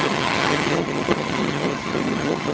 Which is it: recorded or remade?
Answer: remade